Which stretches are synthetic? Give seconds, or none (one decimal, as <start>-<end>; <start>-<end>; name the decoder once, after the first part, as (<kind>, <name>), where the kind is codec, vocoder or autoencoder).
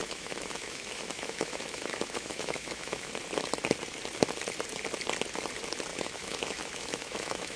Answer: 0.0-3.1 (autoencoder, DAC-VAE); 5.9-7.6